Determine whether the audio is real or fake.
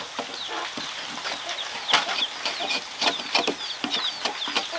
real